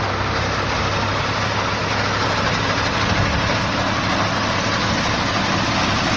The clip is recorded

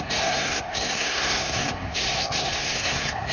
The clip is remade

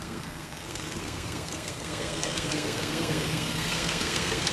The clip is remade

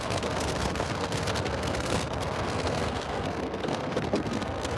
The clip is remade